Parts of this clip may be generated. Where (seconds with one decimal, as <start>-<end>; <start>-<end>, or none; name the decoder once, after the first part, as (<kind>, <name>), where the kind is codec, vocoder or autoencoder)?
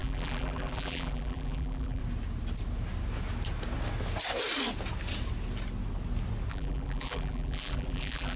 0.0-2.0 (vocoder, BigVGAN v2); 6.5-8.4